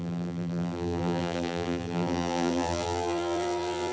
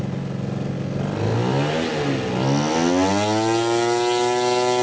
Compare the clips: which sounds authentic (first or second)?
second